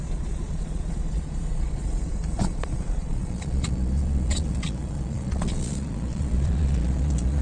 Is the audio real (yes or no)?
no